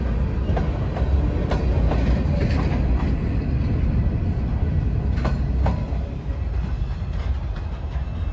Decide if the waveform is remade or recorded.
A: recorded